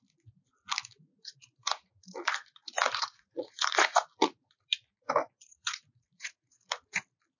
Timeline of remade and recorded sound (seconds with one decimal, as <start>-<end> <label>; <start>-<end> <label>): 0.0-1.1 recorded; 1.1-4.6 remade; 4.6-5.4 recorded; 5.4-7.0 remade; 7.0-7.4 recorded